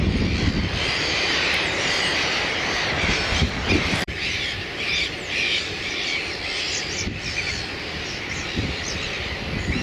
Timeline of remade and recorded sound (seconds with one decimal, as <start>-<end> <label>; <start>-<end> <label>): 0.0-0.9 recorded; 0.9-5.9 remade; 5.9-9.8 recorded